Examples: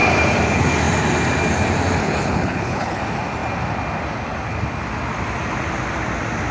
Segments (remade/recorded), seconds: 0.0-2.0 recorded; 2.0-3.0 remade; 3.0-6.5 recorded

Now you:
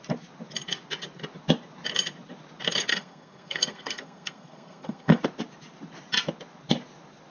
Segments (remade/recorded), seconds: 0.0-2.9 recorded; 2.9-5.2 remade; 5.2-7.3 recorded

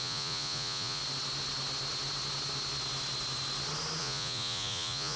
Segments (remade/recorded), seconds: 0.0-1.0 remade; 1.0-4.0 recorded; 4.0-5.2 remade

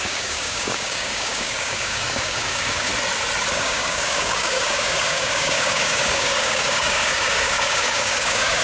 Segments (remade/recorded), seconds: 0.0-2.9 remade; 2.9-3.5 recorded; 3.5-8.6 remade

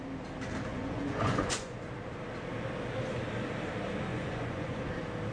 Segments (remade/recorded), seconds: 0.0-0.7 recorded; 0.7-1.8 remade; 1.8-4.1 recorded; 4.1-4.8 remade; 4.8-5.3 recorded

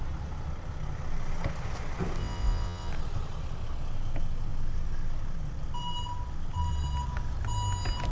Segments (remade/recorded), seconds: 0.0-2.2 recorded; 2.2-2.9 remade; 2.9-8.1 recorded